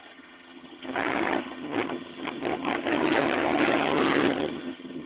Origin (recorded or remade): remade